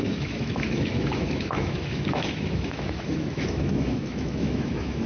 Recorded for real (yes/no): no